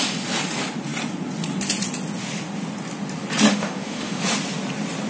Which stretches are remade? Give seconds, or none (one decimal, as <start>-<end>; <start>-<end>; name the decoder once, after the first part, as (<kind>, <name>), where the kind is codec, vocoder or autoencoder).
3.5-4.2 (autoencoder, DAC-VAE)